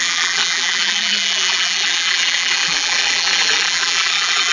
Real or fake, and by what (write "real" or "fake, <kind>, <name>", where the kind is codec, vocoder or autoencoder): fake, vocoder, BigVGAN v2